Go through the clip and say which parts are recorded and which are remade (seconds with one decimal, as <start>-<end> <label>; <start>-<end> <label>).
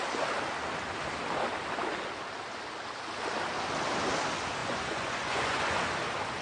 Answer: 0.0-4.6 recorded; 4.6-5.8 remade; 5.8-6.4 recorded